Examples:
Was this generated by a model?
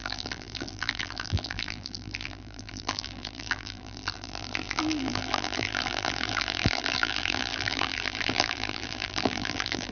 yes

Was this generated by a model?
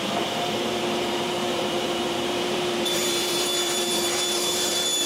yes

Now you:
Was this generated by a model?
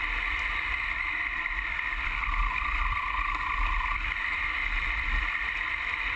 yes